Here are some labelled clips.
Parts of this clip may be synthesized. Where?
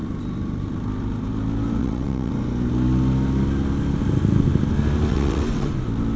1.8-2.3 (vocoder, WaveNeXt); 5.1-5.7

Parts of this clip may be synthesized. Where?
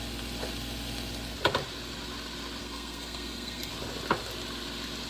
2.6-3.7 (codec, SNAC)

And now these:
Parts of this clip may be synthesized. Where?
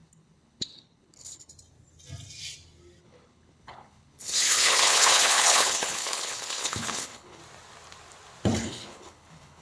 0.0-1.5 (codec, HILCodec); 3.0-7.4; 8.6-9.6